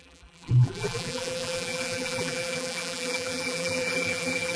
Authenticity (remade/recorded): remade